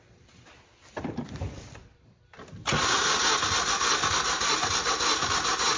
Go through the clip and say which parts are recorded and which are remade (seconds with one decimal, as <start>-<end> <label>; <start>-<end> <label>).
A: 0.0-3.0 remade; 3.0-5.8 recorded